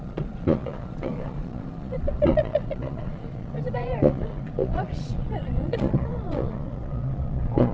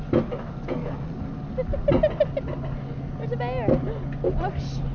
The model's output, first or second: first